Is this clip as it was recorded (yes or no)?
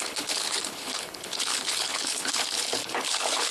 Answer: no